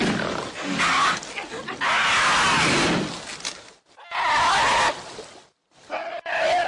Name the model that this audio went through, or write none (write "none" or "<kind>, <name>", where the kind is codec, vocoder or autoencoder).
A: none